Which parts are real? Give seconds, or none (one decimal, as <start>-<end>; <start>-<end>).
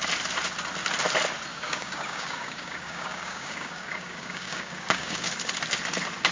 0.0-1.5; 5.3-6.3